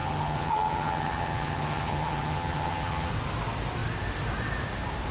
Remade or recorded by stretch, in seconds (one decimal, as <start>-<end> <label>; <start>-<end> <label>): 0.0-3.1 remade; 3.1-5.1 recorded